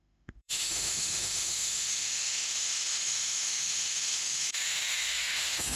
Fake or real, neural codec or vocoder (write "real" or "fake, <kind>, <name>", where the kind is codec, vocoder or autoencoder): fake, autoencoder, DAC-VAE